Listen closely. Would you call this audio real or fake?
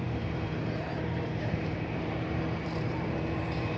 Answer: fake